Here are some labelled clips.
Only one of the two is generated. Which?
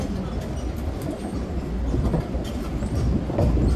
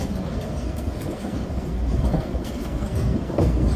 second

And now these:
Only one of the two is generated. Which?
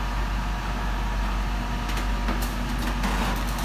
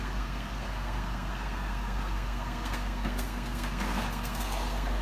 second